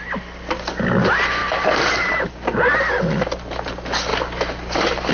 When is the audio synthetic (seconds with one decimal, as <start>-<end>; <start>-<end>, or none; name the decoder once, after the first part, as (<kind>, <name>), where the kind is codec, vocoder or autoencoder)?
1.4-2.1 (vocoder, BigVGAN v2)